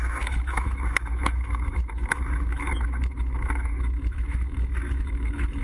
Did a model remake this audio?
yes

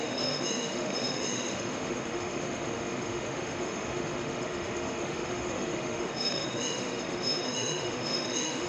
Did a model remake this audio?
yes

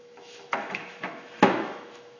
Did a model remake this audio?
yes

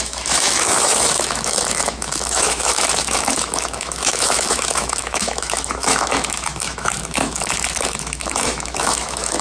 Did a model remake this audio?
yes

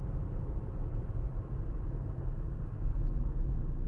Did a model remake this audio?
no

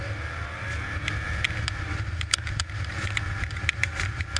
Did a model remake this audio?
no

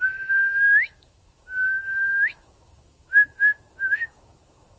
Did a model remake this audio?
yes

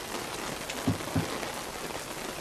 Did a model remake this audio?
no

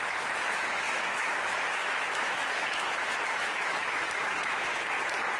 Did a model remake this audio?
yes